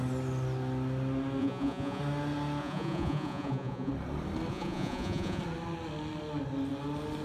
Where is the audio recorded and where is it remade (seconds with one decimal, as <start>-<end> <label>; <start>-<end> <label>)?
0.0-1.4 recorded; 1.4-2.0 remade; 2.0-2.6 recorded; 2.6-3.9 remade; 3.9-4.5 recorded; 4.5-5.4 remade; 5.4-7.2 recorded